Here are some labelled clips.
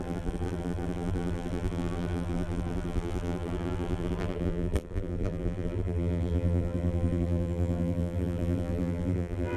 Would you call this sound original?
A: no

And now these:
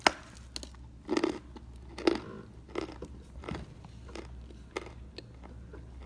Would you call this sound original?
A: yes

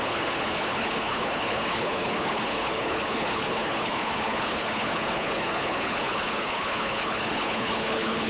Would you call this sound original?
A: no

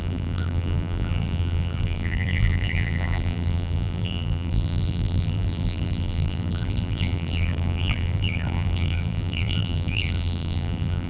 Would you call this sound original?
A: no